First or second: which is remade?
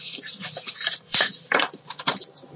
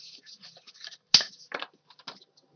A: first